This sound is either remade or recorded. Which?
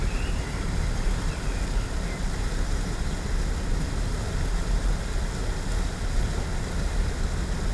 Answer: recorded